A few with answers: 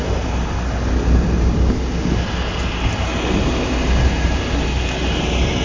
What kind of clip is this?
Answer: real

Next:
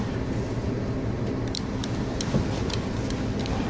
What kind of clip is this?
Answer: real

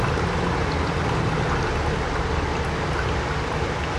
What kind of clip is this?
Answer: real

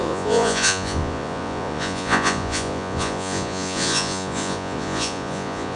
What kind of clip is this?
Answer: fake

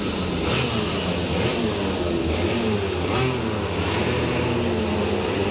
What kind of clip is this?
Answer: real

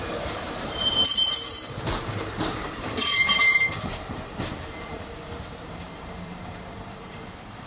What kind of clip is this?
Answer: fake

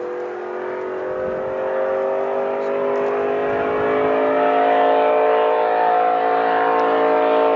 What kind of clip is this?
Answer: real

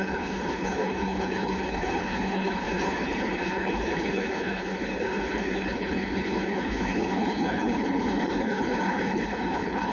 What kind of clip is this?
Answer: fake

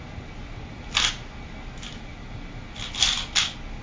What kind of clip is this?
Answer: real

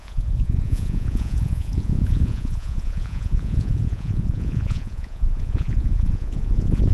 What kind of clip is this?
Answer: fake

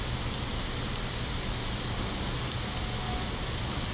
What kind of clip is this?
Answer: real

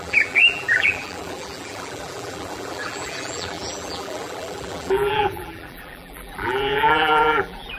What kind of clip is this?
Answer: fake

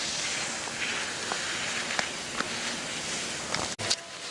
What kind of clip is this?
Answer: real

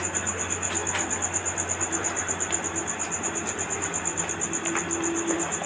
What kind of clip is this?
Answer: fake